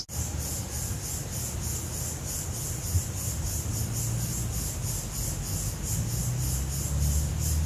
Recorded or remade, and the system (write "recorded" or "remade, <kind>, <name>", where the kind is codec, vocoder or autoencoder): recorded